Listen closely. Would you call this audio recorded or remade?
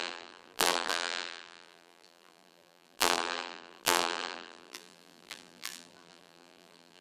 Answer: remade